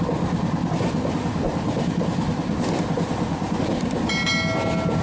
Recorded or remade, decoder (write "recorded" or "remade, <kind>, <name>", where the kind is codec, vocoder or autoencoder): recorded